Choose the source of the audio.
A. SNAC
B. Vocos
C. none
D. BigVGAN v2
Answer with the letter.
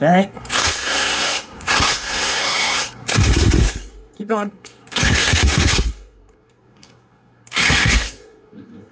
A